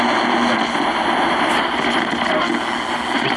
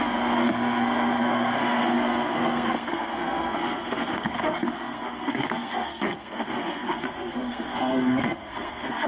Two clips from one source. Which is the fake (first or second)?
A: second